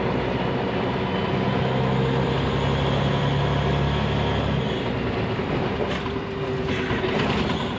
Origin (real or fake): real